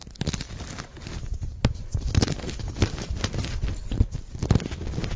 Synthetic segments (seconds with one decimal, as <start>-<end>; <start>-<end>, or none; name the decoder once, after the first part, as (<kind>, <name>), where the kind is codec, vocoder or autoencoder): none